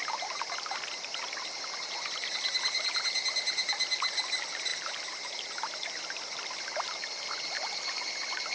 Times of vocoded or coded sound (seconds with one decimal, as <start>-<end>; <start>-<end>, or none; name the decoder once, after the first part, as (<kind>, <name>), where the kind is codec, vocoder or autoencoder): none